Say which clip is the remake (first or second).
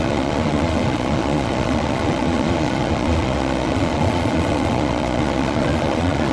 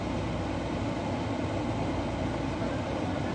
first